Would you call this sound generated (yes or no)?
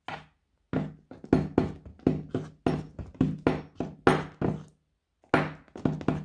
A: no